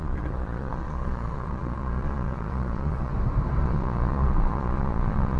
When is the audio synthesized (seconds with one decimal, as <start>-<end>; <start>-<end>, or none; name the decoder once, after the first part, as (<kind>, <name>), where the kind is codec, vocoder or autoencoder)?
0.0-3.1 (vocoder, Vocos); 3.6-5.4